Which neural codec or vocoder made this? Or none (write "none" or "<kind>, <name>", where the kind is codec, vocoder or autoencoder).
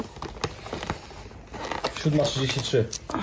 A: none